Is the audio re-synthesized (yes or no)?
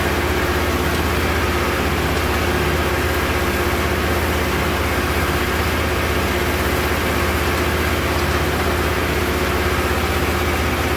no